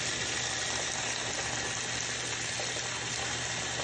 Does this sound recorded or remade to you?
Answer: recorded